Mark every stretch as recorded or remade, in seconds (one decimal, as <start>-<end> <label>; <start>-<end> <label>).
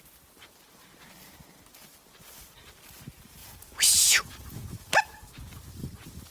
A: 0.0-3.4 recorded; 3.4-5.0 remade; 5.0-6.3 recorded